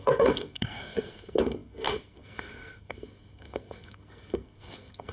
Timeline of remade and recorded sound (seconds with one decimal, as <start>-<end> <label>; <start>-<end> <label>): 0.0-5.1 remade